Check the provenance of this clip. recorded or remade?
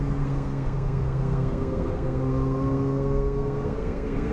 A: remade